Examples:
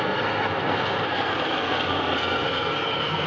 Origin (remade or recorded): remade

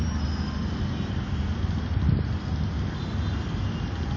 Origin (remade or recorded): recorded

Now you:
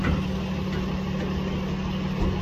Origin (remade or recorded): recorded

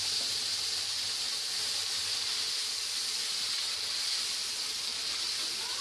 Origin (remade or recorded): recorded